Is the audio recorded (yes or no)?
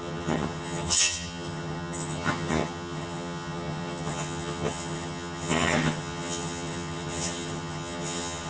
no